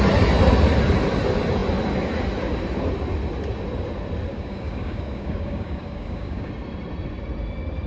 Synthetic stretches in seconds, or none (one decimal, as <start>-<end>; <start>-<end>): 4.3-6.5